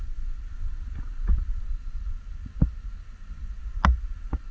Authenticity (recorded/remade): recorded